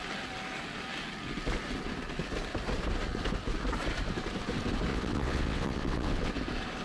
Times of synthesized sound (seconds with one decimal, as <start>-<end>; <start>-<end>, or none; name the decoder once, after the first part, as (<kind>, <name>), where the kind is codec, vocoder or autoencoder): 4.9-6.3 (vocoder, WaveNeXt)